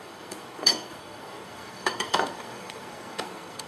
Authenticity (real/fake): fake